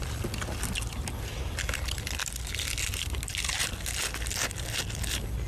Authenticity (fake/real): real